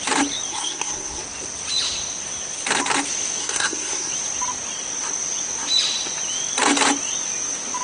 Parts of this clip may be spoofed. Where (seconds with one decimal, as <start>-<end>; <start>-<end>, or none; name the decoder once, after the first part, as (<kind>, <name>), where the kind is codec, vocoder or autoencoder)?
0.5-1.2 (codec, SNAC); 3.4-4.1